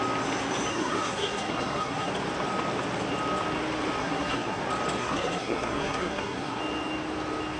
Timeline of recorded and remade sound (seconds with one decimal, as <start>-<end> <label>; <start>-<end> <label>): 0.0-0.7 recorded; 0.7-2.1 remade; 2.1-4.0 recorded; 4.0-4.6 remade; 4.6-5.0 recorded; 5.0-6.6 remade; 6.6-7.6 recorded